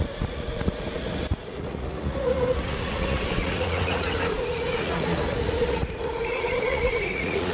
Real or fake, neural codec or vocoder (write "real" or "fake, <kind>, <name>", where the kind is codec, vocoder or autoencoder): fake, vocoder, Vocos